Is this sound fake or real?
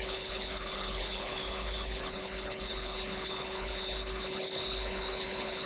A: fake